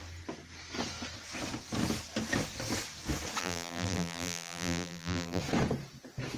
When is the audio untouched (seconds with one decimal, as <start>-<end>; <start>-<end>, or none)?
0.0-3.4; 5.4-6.4